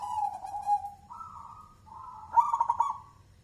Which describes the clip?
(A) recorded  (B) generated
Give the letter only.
B